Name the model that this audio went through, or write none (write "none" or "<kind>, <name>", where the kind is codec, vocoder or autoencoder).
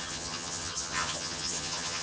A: vocoder, HiFi-GAN